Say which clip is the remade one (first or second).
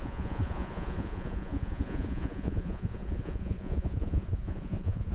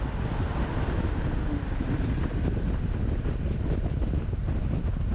first